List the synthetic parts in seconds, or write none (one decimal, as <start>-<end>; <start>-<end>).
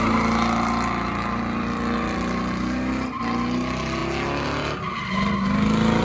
none